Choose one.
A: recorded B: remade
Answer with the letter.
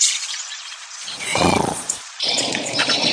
B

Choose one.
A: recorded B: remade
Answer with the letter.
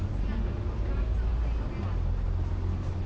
A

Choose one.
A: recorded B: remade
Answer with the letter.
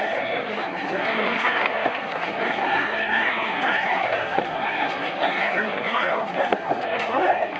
B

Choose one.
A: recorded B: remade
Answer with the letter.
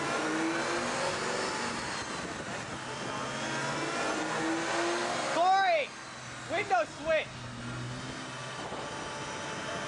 A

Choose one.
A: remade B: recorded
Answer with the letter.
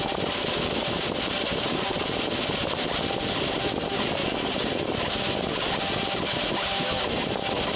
B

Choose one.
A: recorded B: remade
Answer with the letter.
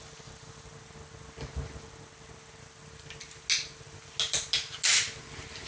A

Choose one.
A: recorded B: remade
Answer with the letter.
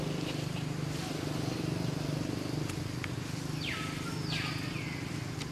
A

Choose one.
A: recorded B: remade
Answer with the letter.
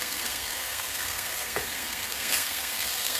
B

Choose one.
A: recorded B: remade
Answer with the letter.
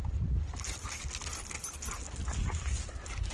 A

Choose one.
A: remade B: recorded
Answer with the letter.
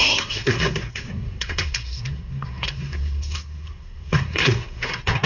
A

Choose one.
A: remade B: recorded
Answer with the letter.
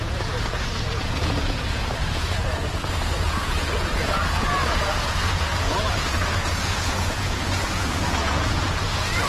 A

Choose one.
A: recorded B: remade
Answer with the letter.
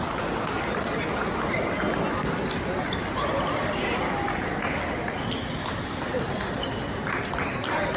A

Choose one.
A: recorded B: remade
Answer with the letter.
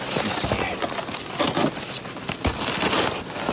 A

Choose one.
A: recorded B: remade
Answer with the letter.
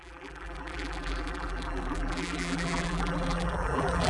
B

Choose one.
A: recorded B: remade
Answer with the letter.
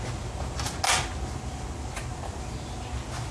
A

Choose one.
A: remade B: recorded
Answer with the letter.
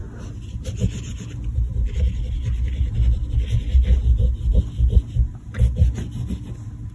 B